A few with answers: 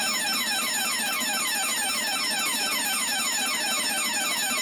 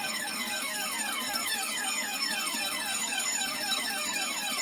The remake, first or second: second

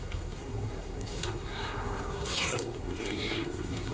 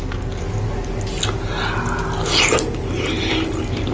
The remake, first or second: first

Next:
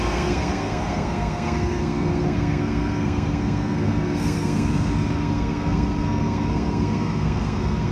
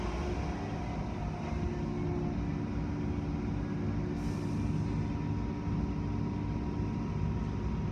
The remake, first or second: first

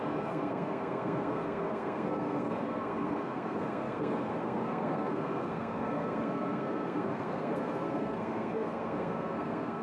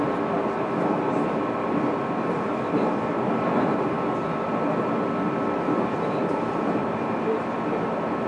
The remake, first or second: first